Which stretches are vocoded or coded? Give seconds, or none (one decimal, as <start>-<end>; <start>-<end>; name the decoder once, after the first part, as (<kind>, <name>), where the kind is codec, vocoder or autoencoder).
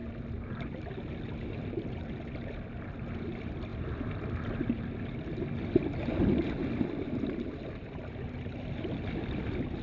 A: none